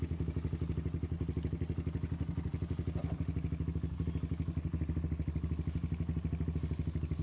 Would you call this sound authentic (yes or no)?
yes